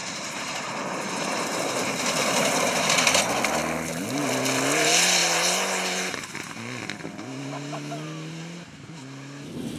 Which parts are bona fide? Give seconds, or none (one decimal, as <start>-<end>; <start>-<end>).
3.2-9.8